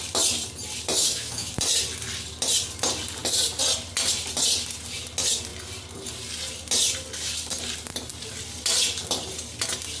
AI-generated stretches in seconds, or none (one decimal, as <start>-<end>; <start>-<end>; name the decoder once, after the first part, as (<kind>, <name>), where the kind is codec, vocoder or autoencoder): 1.0-1.5 (autoencoder, DAC-VAE)